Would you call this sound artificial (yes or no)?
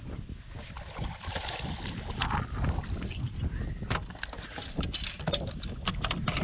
no